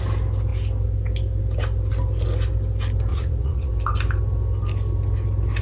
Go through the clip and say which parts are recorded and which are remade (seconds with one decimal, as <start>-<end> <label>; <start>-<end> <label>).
0.0-3.1 recorded; 3.1-3.7 remade; 3.7-5.6 recorded